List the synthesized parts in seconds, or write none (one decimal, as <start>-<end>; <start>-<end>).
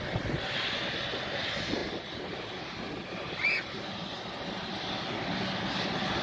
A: none